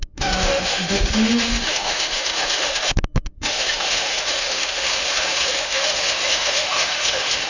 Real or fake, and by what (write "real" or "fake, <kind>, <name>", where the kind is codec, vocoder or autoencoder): fake, autoencoder, DAC-VAE